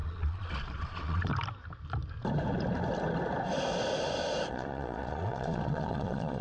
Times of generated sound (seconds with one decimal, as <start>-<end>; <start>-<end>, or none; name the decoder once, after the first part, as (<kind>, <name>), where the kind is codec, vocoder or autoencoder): 0.0-1.3 (vocoder, Vocos); 4.5-6.4